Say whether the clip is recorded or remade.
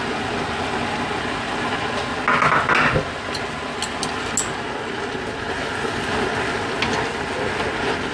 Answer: recorded